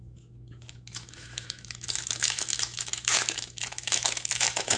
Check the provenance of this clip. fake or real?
fake